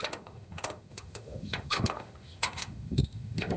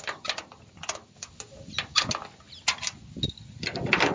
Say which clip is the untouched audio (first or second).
second